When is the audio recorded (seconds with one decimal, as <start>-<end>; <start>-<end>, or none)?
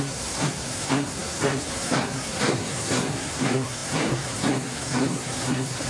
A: none